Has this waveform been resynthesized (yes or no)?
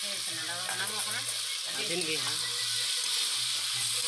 no